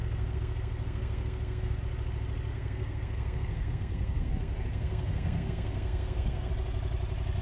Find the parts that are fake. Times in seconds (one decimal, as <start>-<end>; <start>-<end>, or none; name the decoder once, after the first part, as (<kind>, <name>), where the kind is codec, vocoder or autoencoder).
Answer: 0.0-1.8 (codec, SNAC); 2.5-6.5